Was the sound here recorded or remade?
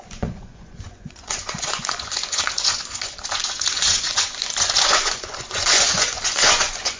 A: remade